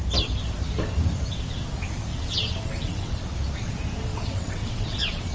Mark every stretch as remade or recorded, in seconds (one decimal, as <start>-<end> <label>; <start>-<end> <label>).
0.0-2.1 recorded; 2.1-3.2 remade; 3.2-4.1 recorded; 4.1-5.3 remade